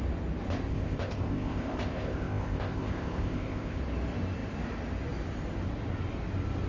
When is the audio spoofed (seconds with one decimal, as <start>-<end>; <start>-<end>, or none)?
0.7-3.8